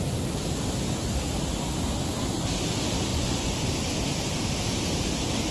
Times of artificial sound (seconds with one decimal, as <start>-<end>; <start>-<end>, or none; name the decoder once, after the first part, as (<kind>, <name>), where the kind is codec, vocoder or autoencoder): 3.1-3.7 (vocoder, Vocos)